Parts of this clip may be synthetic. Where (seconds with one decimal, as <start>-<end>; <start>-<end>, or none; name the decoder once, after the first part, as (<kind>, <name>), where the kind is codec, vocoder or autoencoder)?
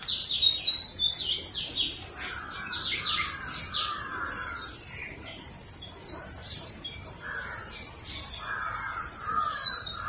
6.4-7.3 (vocoder, BigVGAN v2)